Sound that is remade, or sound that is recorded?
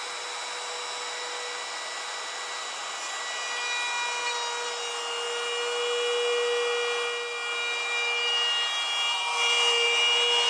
recorded